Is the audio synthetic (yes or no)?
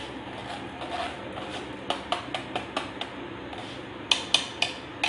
no